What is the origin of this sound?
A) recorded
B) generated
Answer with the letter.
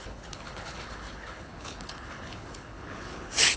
B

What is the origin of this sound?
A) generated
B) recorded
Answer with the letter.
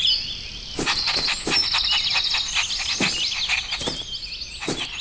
B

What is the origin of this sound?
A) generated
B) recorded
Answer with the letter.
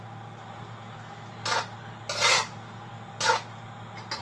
B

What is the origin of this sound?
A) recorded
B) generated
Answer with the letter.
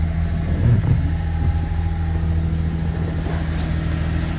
A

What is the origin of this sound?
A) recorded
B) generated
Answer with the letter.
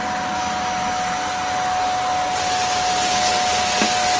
A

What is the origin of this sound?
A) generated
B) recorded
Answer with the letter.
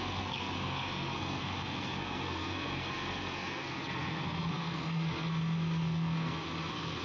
A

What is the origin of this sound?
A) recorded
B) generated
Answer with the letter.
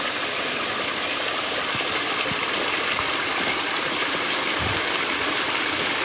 A